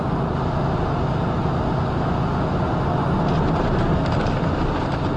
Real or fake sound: real